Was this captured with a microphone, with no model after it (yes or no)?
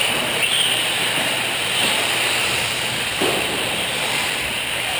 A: no